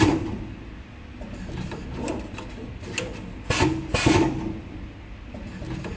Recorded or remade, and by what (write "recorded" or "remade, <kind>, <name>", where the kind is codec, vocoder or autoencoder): recorded